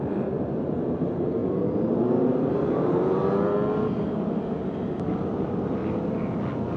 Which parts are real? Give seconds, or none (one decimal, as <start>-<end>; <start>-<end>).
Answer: 1.4-2.3; 3.2-5.1; 5.8-6.8